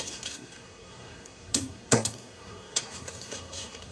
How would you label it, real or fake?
fake